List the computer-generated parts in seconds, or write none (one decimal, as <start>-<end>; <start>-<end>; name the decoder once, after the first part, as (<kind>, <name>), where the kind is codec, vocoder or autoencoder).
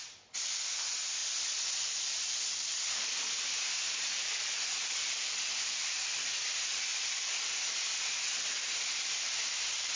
1.2-6.3 (vocoder, BigVGAN v2); 6.9-7.8